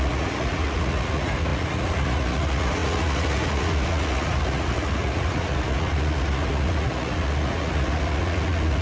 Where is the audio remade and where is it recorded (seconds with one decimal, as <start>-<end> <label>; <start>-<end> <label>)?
0.0-8.8 remade